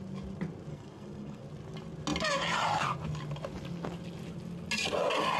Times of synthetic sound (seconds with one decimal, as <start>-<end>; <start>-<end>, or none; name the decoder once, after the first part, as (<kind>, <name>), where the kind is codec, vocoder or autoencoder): 0.7-1.4 (codec, SNAC)